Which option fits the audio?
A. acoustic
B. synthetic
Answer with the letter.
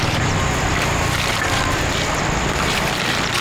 A